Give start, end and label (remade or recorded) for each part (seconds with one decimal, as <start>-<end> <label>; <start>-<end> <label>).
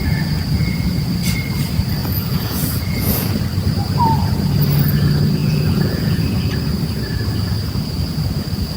0.0-2.0 recorded; 2.0-3.3 remade; 3.3-5.4 recorded; 5.4-6.2 remade; 6.2-8.8 recorded